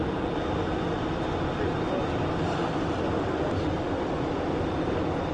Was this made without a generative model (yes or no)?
yes